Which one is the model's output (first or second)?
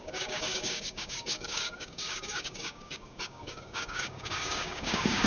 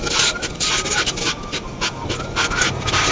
first